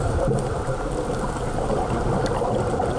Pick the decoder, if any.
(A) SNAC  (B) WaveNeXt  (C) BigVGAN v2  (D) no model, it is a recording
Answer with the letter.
D